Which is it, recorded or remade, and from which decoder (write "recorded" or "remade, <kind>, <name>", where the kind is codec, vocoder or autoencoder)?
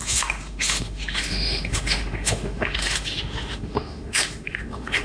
remade, autoencoder, DAC-VAE